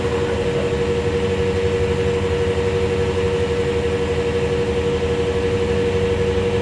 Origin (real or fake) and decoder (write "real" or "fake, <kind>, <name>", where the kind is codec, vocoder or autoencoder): real